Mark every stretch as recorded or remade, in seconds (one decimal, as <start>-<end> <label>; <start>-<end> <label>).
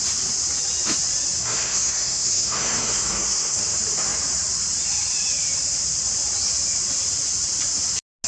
0.0-1.4 recorded; 1.4-3.6 remade; 3.6-8.3 recorded